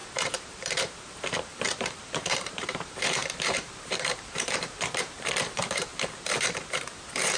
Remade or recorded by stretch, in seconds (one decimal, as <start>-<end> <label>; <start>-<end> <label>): 0.0-7.4 remade